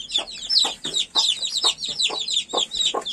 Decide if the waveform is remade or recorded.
recorded